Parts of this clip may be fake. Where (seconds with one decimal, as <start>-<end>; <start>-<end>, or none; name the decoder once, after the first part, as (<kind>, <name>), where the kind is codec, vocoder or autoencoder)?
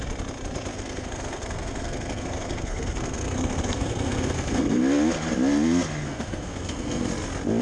0.7-4.8 (codec, SNAC); 6.0-7.1